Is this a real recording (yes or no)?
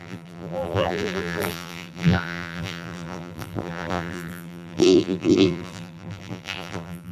no